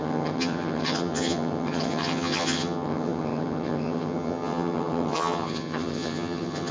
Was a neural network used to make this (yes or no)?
yes